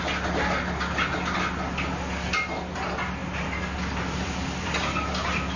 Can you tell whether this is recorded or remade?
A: recorded